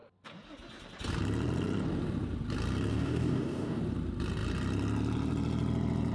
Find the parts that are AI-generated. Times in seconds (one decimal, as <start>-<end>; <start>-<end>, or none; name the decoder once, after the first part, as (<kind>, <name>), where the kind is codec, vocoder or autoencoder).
2.9-3.8 (codec, DAC)